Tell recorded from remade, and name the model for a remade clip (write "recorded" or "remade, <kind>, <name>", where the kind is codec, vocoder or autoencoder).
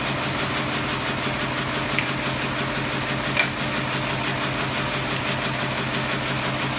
recorded